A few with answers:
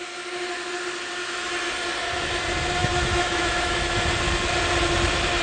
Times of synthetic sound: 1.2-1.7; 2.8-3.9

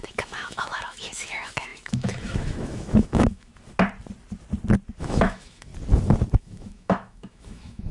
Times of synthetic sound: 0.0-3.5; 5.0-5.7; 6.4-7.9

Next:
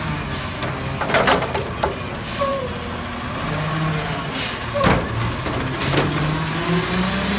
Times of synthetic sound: none

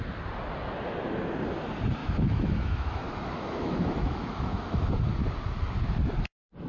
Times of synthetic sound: 2.0-4.9

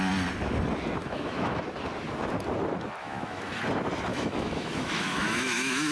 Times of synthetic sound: 1.0-1.6; 3.0-3.6; 4.1-5.9

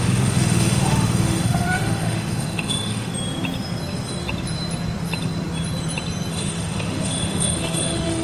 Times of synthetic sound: 0.0-3.1; 6.3-8.2

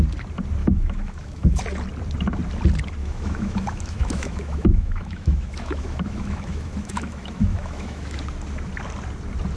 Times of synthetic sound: 0.6-1.6; 3.0-8.2